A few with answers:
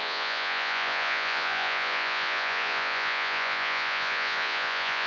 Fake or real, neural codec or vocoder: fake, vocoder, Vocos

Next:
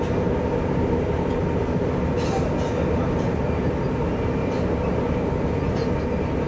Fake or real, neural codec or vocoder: real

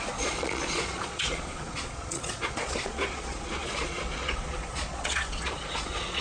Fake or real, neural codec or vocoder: fake, vocoder, Vocos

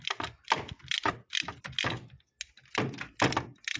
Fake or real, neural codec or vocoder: real